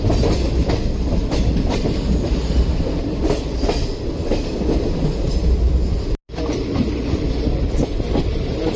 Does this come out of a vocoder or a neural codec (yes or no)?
no